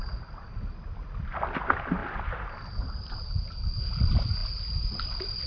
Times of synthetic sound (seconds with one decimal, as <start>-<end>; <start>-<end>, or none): none